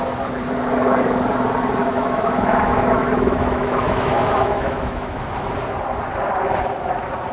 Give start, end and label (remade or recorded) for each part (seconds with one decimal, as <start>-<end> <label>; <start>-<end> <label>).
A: 0.0-1.8 recorded; 1.8-5.5 remade; 5.5-7.3 recorded